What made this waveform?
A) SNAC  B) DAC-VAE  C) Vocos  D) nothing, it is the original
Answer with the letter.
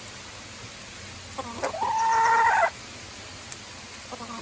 D